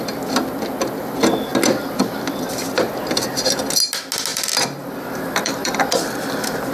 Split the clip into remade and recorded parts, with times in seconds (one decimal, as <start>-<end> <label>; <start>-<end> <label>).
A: 0.0-1.5 recorded; 1.5-2.9 remade; 2.9-4.3 recorded; 4.3-5.8 remade; 5.8-6.7 recorded